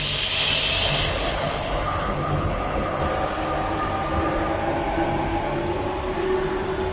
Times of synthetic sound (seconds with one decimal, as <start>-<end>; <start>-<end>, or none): 1.1-3.0